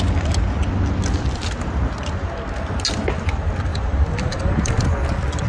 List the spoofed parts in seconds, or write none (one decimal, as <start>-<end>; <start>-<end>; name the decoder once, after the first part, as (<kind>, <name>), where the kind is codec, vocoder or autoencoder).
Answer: 3.7-4.7 (vocoder, BigVGAN v2)